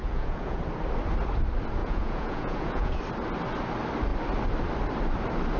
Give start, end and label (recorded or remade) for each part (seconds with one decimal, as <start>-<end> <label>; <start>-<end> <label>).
0.0-0.6 remade; 0.6-1.8 recorded; 1.8-3.0 remade; 3.0-5.6 recorded